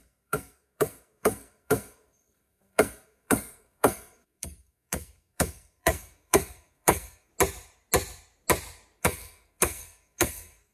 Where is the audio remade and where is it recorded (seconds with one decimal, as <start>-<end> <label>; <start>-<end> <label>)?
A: 0.0-7.3 remade; 7.3-9.0 recorded; 9.0-10.7 remade